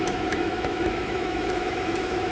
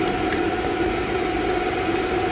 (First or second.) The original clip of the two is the second